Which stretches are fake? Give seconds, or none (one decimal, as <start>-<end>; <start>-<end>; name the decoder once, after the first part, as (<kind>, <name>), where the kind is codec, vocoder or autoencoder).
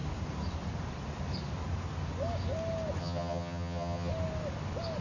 3.0-4.1 (vocoder, HiFi-GAN)